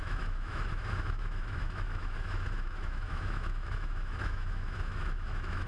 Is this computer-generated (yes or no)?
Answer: yes